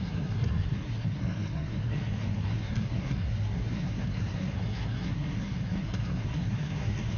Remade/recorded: remade